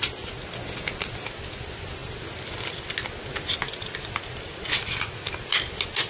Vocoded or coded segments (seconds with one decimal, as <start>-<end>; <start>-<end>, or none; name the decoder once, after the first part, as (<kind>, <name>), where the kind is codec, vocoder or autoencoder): none